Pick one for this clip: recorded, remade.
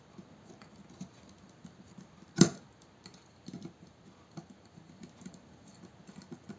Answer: recorded